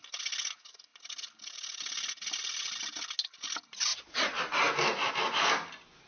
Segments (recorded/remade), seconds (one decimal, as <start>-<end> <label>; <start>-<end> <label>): 0.0-6.1 recorded